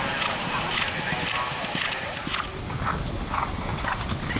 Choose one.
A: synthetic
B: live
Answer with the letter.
B